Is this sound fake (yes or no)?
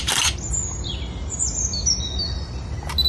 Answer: no